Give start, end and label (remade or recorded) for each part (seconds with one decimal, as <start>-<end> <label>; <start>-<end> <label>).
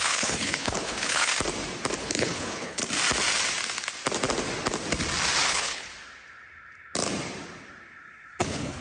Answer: 0.0-1.3 remade; 1.3-2.0 recorded; 2.0-2.8 remade; 2.8-5.5 recorded; 5.5-5.9 remade; 5.9-8.4 recorded; 8.4-8.8 remade